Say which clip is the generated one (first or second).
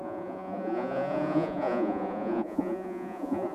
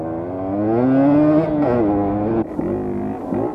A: first